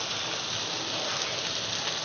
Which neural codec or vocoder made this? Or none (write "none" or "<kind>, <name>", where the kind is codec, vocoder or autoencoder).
none